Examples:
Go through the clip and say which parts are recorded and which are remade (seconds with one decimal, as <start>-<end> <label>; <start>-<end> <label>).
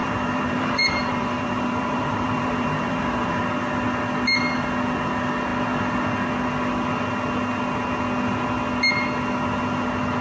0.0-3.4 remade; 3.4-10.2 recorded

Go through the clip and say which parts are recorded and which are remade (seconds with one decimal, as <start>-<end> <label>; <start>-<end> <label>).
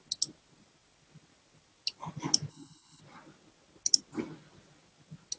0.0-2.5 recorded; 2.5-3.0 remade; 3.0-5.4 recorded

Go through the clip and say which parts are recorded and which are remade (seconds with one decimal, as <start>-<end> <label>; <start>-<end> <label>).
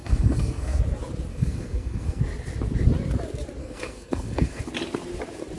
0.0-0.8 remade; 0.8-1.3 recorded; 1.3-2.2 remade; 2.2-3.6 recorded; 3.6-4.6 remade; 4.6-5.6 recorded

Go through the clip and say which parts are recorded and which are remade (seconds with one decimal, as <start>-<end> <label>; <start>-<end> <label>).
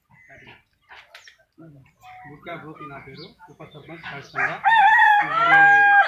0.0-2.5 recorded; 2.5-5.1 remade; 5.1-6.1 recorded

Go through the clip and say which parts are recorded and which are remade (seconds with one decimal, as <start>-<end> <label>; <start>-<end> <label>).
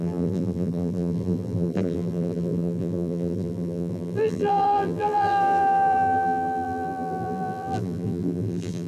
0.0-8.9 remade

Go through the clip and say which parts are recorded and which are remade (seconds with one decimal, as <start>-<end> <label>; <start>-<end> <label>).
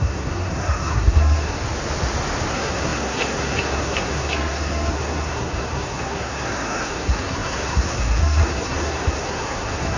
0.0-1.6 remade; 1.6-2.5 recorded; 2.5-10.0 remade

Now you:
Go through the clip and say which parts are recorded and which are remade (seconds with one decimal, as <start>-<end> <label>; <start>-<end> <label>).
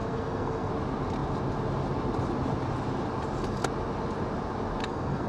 0.0-0.7 remade; 0.7-4.8 recorded; 4.8-5.3 remade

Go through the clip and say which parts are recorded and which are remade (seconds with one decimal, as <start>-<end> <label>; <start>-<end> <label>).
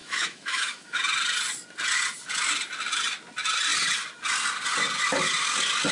0.0-1.0 remade; 1.0-5.9 recorded